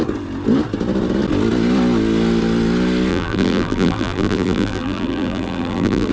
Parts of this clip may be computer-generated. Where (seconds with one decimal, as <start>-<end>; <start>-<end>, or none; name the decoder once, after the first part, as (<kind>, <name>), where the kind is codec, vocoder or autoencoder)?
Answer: 3.1-6.1 (vocoder, BigVGAN v2)